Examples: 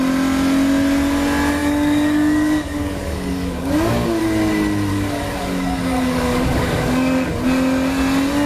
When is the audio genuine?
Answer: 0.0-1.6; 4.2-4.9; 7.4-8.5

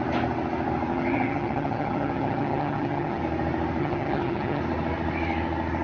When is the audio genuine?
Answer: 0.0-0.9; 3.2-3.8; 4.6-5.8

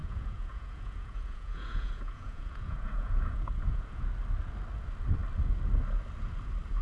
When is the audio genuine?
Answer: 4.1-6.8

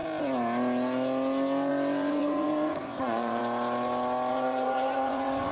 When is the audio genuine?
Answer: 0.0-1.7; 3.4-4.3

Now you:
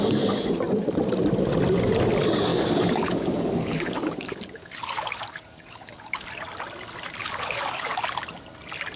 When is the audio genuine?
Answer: 0.0-2.5; 6.3-7.2; 8.0-9.0

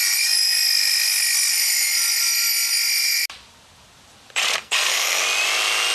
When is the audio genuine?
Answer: 0.0-4.6; 5.2-5.9